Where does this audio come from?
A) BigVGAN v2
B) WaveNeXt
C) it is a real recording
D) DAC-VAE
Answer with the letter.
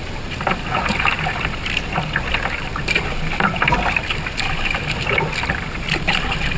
C